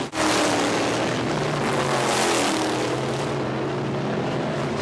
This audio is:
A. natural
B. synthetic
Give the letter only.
A